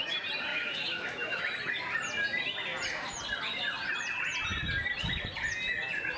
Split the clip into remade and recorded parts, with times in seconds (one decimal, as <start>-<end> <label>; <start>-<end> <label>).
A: 0.0-0.5 recorded; 0.5-1.4 remade; 1.4-6.2 recorded